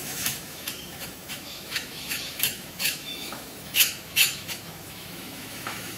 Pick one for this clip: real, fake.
fake